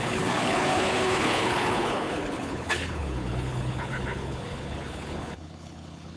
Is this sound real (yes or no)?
no